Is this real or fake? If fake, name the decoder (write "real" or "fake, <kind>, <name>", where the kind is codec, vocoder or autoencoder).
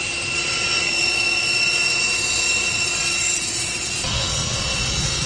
fake, vocoder, Vocos